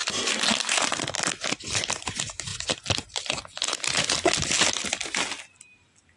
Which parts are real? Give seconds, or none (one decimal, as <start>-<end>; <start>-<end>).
0.0-1.5; 2.5-6.2